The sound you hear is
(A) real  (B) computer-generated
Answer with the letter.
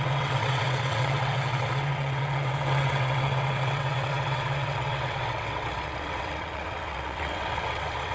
B